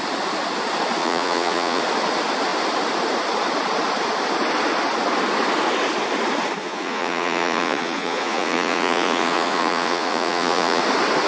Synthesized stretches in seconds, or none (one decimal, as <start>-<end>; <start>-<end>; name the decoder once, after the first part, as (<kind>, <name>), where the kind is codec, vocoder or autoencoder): 1.0-1.8 (vocoder, Vocos); 6.6-10.8